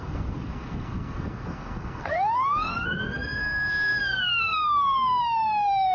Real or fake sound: fake